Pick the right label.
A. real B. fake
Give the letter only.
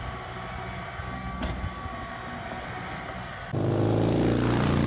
A